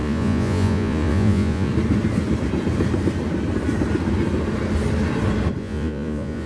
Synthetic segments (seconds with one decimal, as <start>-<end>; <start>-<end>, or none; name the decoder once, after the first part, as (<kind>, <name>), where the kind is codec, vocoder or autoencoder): 0.0-1.7 (vocoder, Vocos); 5.6-6.5